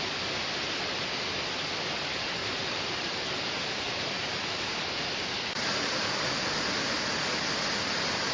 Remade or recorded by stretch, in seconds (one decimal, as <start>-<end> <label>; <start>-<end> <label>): 0.0-2.4 recorded; 2.4-5.0 remade; 5.0-8.3 recorded